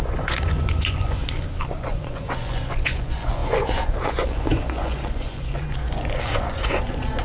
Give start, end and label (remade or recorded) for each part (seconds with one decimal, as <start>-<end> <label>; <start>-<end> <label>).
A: 0.0-1.2 remade; 1.2-1.8 recorded; 1.8-7.2 remade